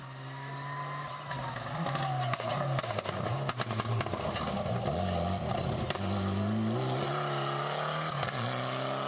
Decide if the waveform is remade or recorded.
recorded